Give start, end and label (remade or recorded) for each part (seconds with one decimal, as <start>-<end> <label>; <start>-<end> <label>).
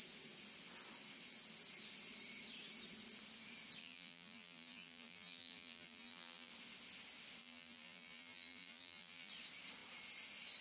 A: 0.0-3.8 recorded; 3.8-6.5 remade; 6.5-7.4 recorded; 7.4-9.3 remade; 9.3-10.6 recorded